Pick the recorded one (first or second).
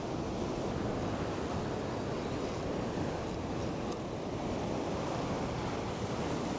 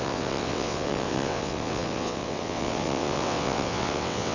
first